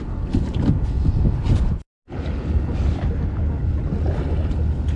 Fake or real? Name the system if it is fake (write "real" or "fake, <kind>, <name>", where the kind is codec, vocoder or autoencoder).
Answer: real